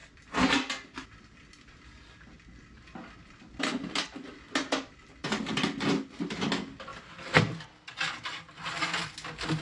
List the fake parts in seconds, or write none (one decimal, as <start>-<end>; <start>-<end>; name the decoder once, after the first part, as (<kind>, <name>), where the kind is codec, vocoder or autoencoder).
none